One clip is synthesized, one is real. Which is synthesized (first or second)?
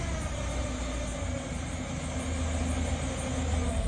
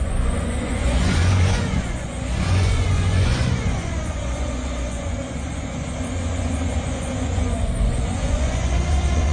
second